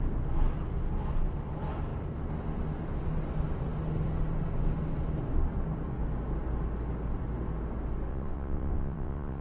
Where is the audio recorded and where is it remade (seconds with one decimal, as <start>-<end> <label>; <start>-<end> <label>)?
0.0-8.1 recorded; 8.1-9.4 remade